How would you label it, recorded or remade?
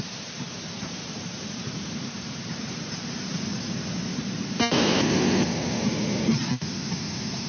remade